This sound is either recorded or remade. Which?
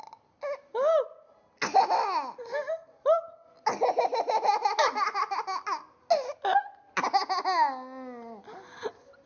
recorded